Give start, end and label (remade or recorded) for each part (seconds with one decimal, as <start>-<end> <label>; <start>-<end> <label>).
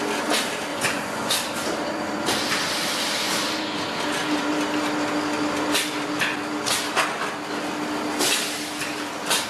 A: 0.0-0.7 recorded; 0.7-1.3 remade; 1.3-9.5 recorded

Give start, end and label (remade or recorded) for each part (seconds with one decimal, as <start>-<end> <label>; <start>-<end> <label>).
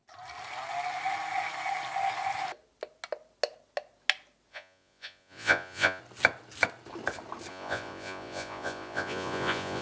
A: 0.0-4.5 recorded; 4.5-6.0 remade; 6.0-7.5 recorded; 7.5-9.8 remade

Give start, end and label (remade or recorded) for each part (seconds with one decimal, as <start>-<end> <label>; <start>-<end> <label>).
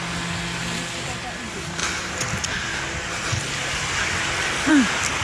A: 0.0-5.2 recorded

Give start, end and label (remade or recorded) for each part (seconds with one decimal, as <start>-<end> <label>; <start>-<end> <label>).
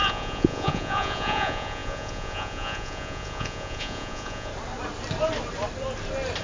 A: 0.0-4.5 remade; 4.5-6.4 recorded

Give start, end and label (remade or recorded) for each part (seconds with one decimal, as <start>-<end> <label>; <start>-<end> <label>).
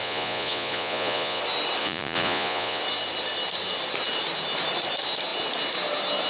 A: 0.0-1.4 remade; 1.4-1.8 recorded; 1.8-2.8 remade; 2.8-6.3 recorded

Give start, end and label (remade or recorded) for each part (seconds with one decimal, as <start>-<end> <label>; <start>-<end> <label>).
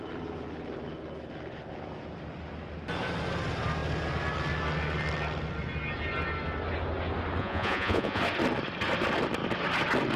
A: 0.0-7.4 recorded; 7.4-8.2 remade; 8.2-10.2 recorded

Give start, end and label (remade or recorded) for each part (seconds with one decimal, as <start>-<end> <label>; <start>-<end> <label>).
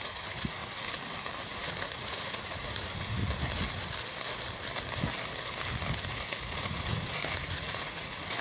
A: 0.0-0.6 remade; 0.6-1.4 recorded; 1.4-3.2 remade; 3.2-5.9 recorded; 5.9-8.4 remade